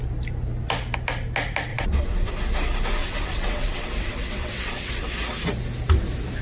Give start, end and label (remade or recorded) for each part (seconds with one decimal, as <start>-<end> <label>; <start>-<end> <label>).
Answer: 0.0-1.7 recorded; 1.7-2.3 remade; 2.3-3.0 recorded; 3.0-4.9 remade; 4.9-6.4 recorded